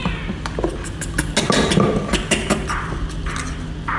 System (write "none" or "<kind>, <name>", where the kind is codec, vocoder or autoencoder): none